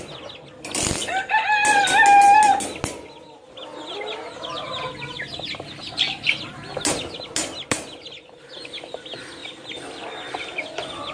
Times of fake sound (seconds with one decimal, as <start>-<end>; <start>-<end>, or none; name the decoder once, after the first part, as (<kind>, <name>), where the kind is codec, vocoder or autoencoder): none